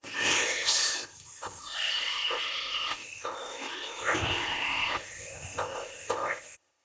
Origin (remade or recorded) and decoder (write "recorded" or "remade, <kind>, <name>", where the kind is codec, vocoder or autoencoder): remade, codec, ZipCodec